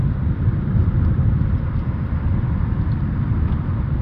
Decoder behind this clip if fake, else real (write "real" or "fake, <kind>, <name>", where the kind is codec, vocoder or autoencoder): fake, vocoder, BigVGAN v2